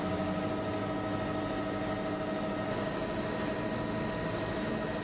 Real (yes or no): yes